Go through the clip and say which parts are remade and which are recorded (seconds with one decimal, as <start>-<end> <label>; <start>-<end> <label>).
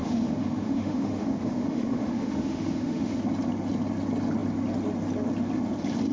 0.0-3.2 remade; 3.2-6.1 recorded